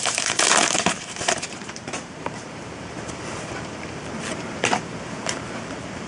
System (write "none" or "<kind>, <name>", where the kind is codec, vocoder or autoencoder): vocoder, BigVGAN v2